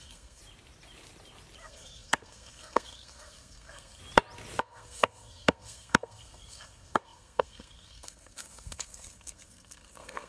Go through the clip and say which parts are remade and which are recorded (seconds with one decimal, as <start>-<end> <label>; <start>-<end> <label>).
0.0-0.4 remade; 0.4-1.6 recorded; 1.6-4.0 remade; 4.0-4.6 recorded; 4.6-10.3 remade